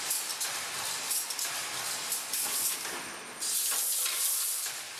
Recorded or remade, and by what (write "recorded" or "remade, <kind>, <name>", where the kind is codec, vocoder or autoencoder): recorded